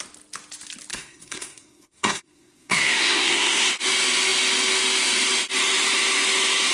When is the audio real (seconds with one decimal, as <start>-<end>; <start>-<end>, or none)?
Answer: 0.0-0.9; 3.7-6.7